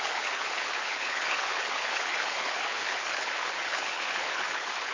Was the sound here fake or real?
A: fake